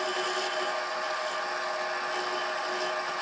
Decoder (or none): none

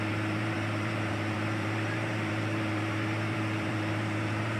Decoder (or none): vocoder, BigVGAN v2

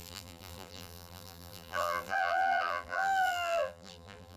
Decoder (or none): vocoder, BigVGAN v2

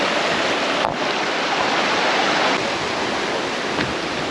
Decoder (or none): none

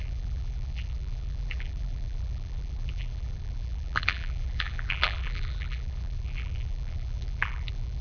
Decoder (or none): vocoder, BigVGAN v2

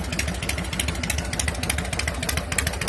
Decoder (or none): none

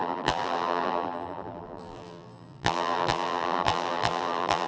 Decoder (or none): vocoder, BigVGAN v2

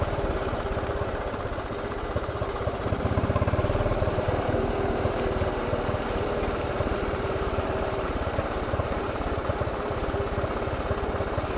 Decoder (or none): vocoder, BigVGAN v2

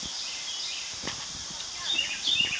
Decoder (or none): vocoder, BigVGAN v2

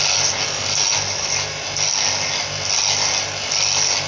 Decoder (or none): none